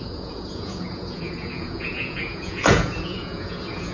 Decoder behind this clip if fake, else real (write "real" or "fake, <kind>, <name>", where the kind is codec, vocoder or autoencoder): fake, vocoder, Vocos